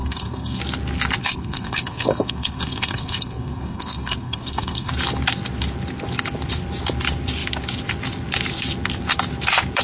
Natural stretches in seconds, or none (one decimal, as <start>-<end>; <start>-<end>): 0.6-1.2; 4.9-9.8